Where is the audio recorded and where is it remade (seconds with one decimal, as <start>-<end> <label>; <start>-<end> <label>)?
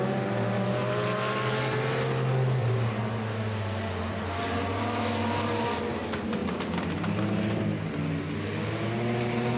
0.0-6.4 recorded; 6.4-7.6 remade; 7.6-9.6 recorded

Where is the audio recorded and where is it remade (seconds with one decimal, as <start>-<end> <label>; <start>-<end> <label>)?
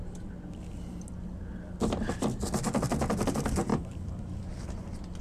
0.0-3.7 recorded; 3.7-4.4 remade; 4.4-5.2 recorded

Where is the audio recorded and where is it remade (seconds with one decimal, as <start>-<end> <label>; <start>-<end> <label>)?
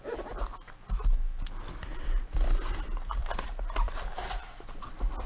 0.0-1.9 recorded; 1.9-4.5 remade; 4.5-5.3 recorded